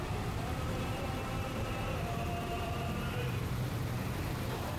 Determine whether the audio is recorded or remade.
remade